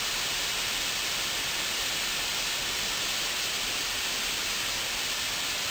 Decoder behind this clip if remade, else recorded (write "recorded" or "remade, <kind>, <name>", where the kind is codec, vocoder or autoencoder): recorded